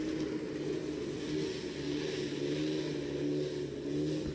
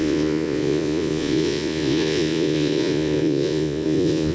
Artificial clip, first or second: second